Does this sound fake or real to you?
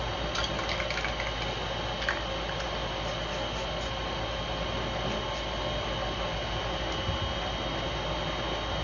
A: real